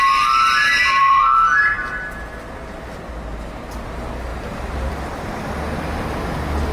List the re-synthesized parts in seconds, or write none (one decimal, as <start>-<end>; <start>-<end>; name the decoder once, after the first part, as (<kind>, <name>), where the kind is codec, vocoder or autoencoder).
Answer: 1.0-1.6 (codec, SNAC)